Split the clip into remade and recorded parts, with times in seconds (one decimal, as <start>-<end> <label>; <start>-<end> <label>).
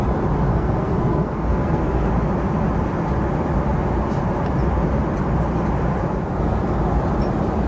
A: 0.0-0.5 recorded; 0.5-2.1 remade; 2.1-7.7 recorded